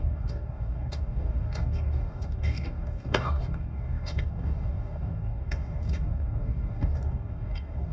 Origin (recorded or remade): remade